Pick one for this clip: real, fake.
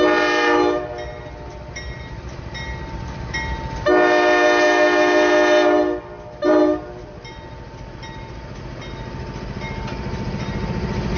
real